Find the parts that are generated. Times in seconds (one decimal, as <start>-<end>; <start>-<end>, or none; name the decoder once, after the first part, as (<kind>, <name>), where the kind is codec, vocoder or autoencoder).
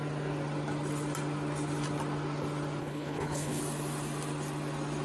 2.8-3.6 (codec, HILCodec)